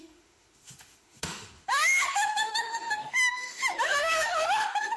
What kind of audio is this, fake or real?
fake